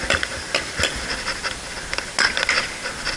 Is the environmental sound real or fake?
real